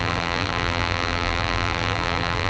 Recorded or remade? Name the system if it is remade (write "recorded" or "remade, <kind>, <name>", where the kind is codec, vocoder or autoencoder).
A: remade, vocoder, BigVGAN v2